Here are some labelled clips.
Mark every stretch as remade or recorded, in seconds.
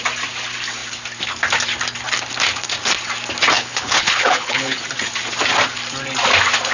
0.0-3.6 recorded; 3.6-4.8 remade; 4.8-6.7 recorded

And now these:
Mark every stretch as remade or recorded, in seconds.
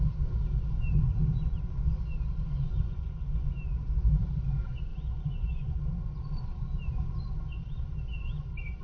0.0-2.3 recorded; 2.3-3.5 remade; 3.5-4.9 recorded; 4.9-5.8 remade; 5.8-8.8 recorded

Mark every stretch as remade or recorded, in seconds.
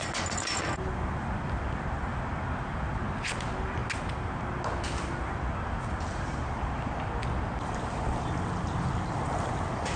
0.0-10.0 recorded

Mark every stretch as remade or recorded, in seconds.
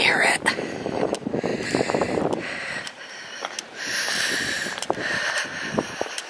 0.0-1.5 remade; 1.5-2.6 recorded; 2.6-6.3 remade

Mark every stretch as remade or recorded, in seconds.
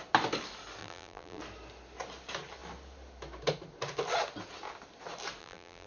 0.0-0.8 recorded; 0.8-1.4 remade; 1.4-5.4 recorded; 5.4-5.9 remade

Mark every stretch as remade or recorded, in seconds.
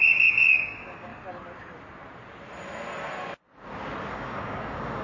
0.0-1.1 remade; 1.1-4.1 recorded; 4.1-5.0 remade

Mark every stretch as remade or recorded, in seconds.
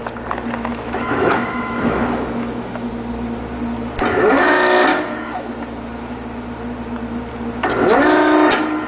0.0-0.7 recorded; 0.7-2.9 remade; 2.9-4.9 recorded; 4.9-5.5 remade; 5.5-8.9 recorded